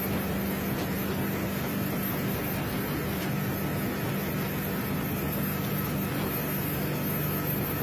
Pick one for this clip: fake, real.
real